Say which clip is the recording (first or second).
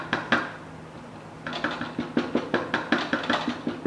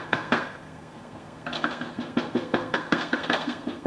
first